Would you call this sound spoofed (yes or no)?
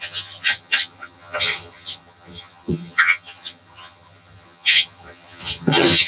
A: yes